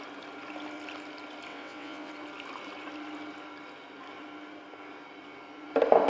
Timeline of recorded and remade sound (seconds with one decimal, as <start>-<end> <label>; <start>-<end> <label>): 0.0-1.5 recorded; 1.5-2.1 remade; 2.1-6.1 recorded